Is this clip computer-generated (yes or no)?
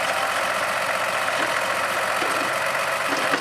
no